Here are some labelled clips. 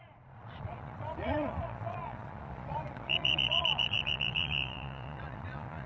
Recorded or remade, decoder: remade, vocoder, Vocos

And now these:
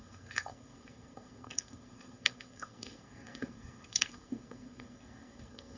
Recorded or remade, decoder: remade, codec, SNAC